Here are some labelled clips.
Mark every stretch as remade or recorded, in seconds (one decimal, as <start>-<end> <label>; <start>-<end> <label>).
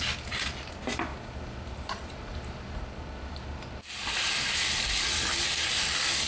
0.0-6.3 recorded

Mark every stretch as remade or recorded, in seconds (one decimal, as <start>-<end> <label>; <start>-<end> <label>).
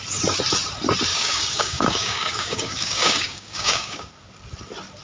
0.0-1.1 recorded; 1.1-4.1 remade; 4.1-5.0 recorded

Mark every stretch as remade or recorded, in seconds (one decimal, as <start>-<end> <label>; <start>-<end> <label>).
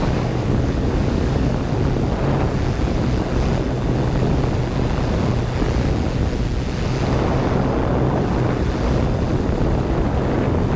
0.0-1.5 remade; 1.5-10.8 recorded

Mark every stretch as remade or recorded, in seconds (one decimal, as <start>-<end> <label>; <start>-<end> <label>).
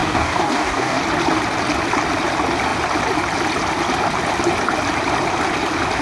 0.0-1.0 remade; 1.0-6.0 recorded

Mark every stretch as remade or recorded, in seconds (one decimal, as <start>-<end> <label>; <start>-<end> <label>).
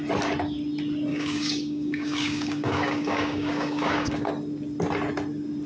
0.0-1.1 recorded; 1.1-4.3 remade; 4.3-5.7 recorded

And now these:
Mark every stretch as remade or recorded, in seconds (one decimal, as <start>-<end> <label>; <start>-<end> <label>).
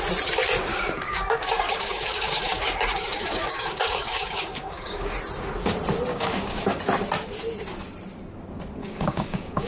0.0-0.7 recorded; 0.7-5.1 remade; 5.1-6.1 recorded; 6.1-6.8 remade; 6.8-8.8 recorded; 8.8-9.7 remade